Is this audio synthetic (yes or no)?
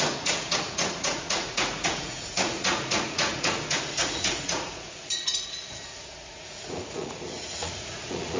yes